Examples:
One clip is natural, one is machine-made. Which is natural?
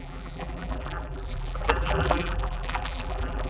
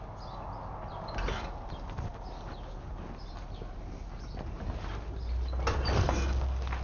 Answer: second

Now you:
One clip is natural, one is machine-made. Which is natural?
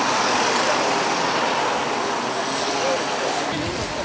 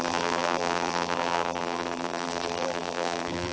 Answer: first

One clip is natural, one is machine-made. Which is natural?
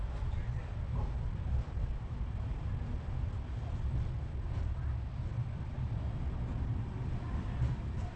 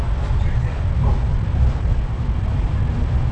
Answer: second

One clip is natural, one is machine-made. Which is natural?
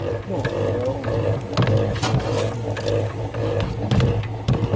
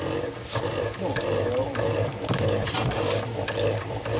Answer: first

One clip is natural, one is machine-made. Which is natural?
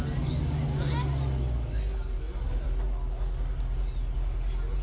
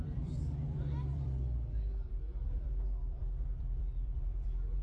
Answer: first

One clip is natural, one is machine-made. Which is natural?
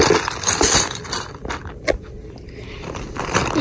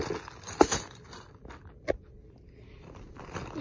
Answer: second